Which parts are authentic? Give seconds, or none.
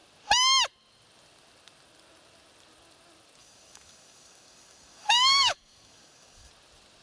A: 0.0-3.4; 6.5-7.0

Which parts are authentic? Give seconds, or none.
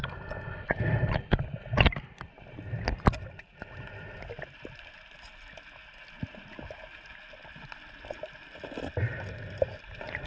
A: 0.0-10.3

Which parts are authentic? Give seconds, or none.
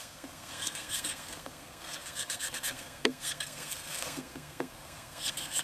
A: none